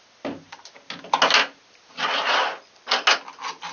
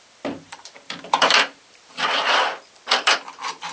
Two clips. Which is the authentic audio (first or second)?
first